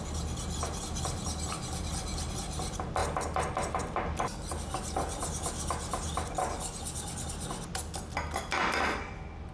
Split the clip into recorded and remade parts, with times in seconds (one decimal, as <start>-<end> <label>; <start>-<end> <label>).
0.0-9.5 recorded